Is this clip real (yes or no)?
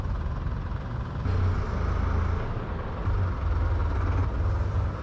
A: yes